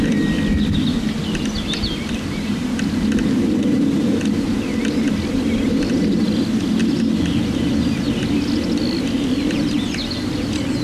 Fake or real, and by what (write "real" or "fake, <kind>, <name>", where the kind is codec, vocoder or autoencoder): real